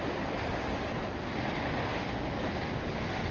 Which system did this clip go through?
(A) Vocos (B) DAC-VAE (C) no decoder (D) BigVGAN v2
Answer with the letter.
C